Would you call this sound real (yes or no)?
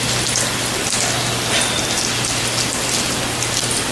yes